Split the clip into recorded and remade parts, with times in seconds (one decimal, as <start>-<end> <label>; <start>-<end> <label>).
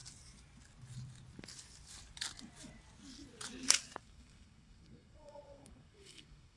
0.0-4.0 recorded; 4.0-6.6 remade